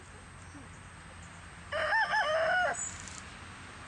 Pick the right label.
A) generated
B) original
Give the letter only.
B